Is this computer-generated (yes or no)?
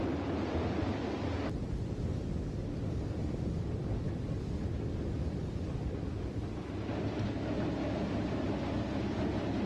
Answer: no